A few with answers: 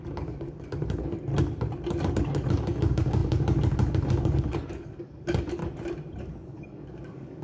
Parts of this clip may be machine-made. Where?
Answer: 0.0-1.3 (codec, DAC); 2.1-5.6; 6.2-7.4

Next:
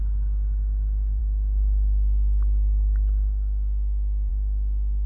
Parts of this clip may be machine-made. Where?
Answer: none